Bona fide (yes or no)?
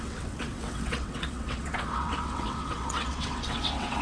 no